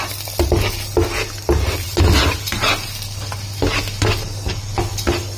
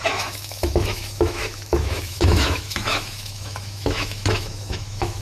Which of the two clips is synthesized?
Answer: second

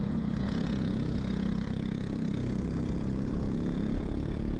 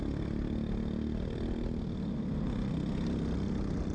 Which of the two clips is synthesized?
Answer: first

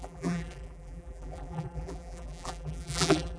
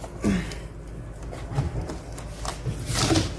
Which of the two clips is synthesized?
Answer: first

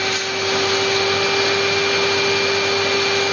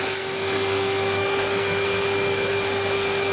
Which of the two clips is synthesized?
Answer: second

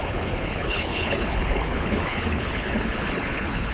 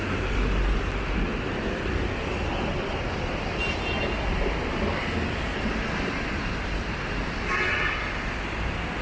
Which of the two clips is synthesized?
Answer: first